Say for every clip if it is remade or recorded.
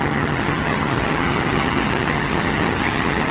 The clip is remade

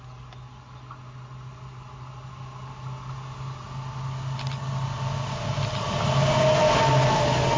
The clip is recorded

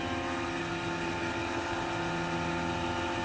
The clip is recorded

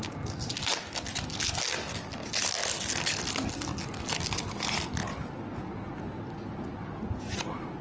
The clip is recorded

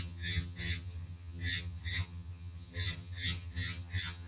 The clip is remade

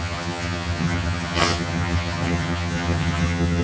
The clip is remade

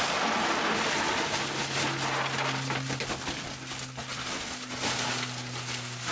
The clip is recorded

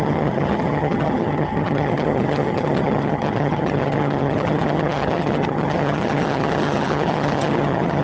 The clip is remade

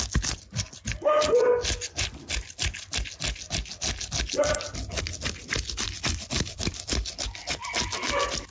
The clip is recorded